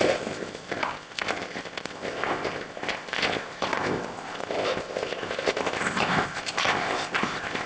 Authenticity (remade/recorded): remade